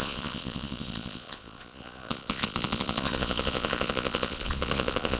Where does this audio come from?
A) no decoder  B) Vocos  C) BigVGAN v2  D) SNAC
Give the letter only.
B